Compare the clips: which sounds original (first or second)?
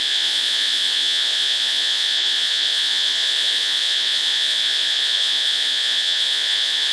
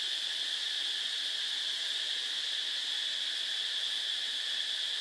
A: second